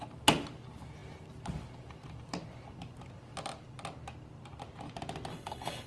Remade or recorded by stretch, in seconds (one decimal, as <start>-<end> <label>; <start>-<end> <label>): 0.0-5.3 recorded; 5.3-5.9 remade